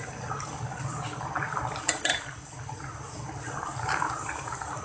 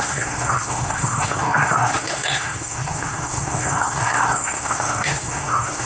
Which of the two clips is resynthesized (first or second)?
second